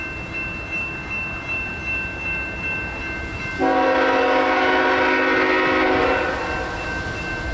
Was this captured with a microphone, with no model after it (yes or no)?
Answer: yes